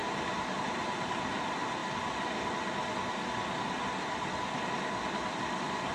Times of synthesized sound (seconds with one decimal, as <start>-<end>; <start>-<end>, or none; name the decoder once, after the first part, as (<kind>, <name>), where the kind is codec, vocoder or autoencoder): 0.0-1.8 (vocoder, BigVGAN v2); 5.3-5.9